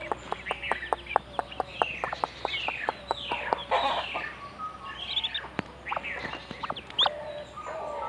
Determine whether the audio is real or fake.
real